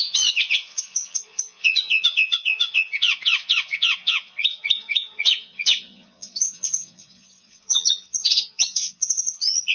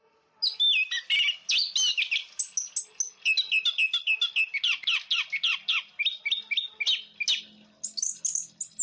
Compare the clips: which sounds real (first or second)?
second